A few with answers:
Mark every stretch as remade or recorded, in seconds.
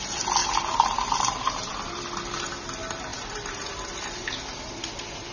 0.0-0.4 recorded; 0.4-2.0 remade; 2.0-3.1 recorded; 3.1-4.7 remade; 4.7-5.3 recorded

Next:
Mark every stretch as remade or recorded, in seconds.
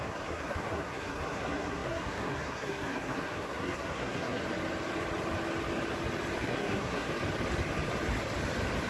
0.0-4.4 remade; 4.4-6.4 recorded; 6.4-7.1 remade; 7.1-8.9 recorded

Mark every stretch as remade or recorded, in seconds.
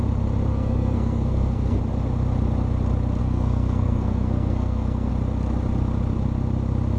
0.0-0.5 recorded; 0.5-1.8 remade; 1.8-3.2 recorded; 3.2-5.1 remade; 5.1-7.0 recorded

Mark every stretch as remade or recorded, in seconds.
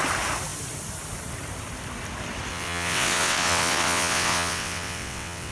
0.0-2.5 recorded; 2.5-5.5 remade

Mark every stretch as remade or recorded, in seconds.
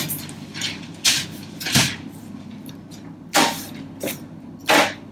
0.0-0.6 recorded; 0.6-3.3 remade; 3.3-5.1 recorded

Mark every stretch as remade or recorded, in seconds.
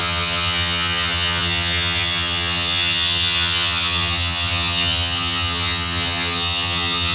0.0-7.1 remade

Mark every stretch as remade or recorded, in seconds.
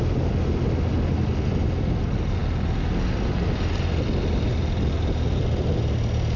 0.0-6.4 recorded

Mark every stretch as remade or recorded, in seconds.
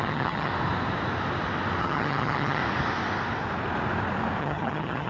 0.0-0.5 remade; 0.5-1.8 recorded; 1.8-2.6 remade; 2.6-4.4 recorded; 4.4-5.1 remade